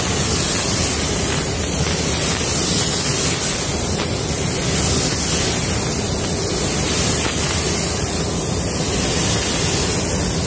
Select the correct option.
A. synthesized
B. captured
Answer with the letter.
B